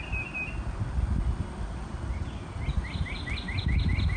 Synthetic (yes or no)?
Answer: no